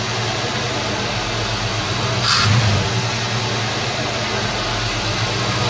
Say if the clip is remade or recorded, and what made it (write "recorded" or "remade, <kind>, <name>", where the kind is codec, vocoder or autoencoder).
recorded